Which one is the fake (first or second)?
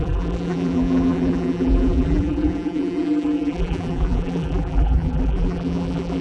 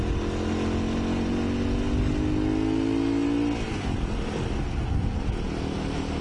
first